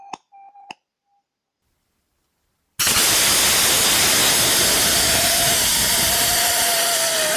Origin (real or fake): real